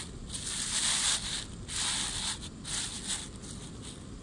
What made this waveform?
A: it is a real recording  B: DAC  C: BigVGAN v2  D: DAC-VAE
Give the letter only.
A